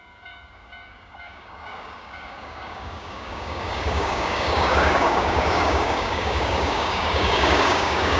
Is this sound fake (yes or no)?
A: yes